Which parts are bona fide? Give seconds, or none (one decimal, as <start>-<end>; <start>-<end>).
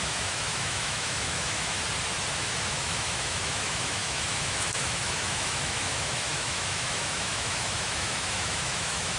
1.8-2.3